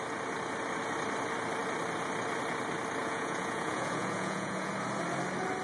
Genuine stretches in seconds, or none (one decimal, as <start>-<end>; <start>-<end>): 0.0-3.0; 4.7-5.6